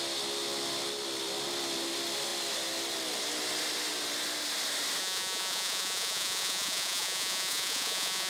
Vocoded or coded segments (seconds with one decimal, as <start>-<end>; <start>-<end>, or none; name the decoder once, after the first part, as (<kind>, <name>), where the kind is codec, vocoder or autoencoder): 5.0-8.3 (vocoder, Vocos)